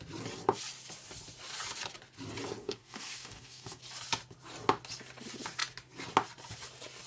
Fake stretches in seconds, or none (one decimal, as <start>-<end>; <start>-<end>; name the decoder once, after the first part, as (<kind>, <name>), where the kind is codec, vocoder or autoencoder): 2.6-3.8 (codec, DAC)